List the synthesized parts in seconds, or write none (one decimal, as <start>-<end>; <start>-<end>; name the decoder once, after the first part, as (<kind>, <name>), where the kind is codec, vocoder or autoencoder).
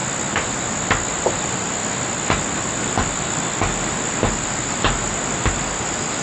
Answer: none